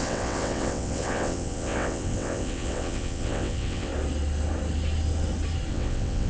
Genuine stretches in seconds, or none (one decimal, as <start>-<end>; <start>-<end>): 3.9-5.7